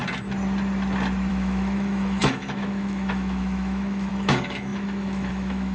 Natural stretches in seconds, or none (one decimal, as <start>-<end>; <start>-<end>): 0.0-1.3